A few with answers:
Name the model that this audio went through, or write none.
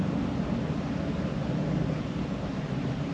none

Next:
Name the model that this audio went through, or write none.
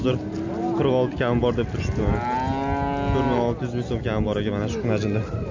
none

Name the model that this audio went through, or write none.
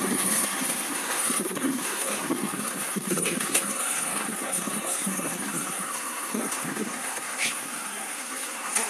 codec, SNAC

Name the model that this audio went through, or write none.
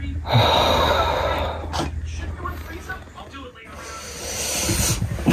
none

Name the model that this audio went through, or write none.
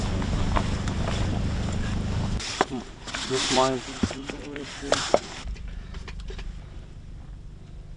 vocoder, BigVGAN v2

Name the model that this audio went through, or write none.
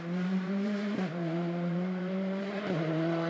vocoder, BigVGAN v2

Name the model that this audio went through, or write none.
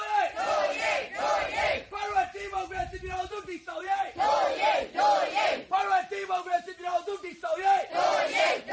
vocoder, BigVGAN v2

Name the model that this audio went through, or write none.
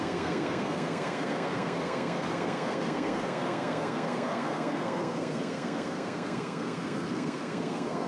codec, SNAC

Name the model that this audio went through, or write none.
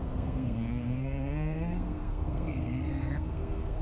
codec, SNAC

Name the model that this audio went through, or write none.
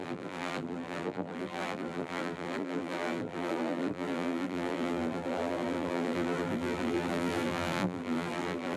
vocoder, BigVGAN v2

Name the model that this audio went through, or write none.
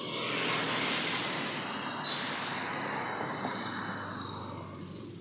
none